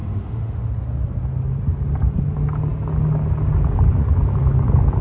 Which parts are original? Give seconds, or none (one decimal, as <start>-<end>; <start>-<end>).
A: 0.7-5.0